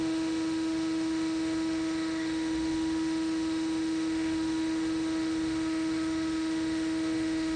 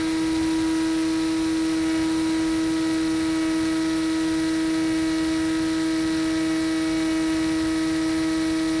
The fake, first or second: first